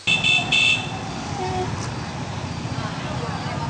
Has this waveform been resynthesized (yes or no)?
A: no